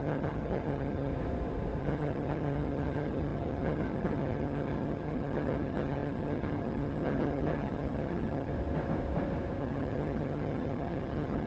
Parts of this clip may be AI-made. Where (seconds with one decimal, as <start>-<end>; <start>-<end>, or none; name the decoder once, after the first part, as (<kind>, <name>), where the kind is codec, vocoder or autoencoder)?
0.0-1.1 (vocoder, HiFi-GAN); 1.8-8.5; 9.6-11.5